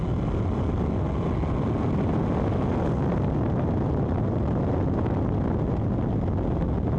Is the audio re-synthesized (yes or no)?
no